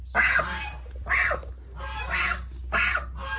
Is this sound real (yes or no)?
yes